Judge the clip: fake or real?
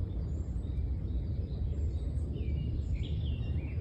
real